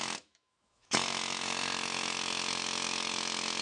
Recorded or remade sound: remade